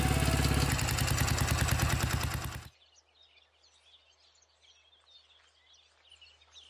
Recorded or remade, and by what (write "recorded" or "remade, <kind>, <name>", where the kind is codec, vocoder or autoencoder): recorded